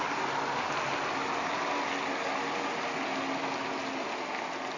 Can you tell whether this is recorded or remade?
recorded